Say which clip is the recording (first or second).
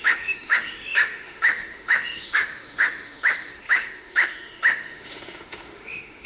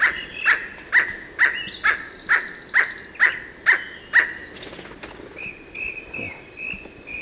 second